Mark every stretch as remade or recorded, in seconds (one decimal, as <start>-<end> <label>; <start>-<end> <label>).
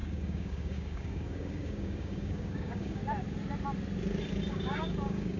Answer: 0.0-3.0 remade; 3.0-4.5 recorded; 4.5-5.4 remade